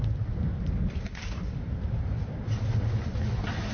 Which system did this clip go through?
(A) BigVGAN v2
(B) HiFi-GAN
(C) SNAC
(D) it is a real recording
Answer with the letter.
D